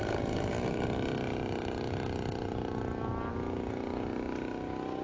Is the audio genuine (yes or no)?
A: yes